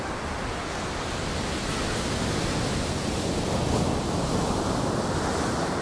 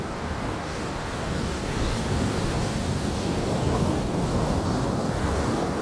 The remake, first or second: second